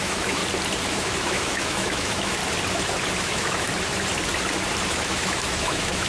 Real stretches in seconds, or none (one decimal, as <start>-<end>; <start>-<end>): 0.4-0.9; 2.4-3.2; 3.7-4.9